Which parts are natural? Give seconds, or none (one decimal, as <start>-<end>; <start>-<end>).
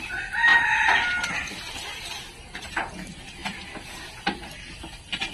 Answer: 0.0-5.3